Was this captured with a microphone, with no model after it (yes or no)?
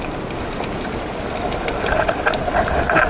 yes